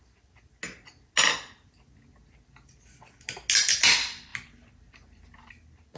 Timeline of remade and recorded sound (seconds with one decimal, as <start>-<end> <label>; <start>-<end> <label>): 0.0-6.0 recorded

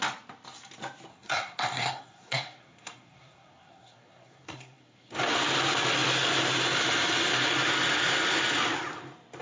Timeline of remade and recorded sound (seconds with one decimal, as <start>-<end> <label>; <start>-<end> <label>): 0.0-1.1 recorded; 1.1-5.1 remade; 5.1-9.4 recorded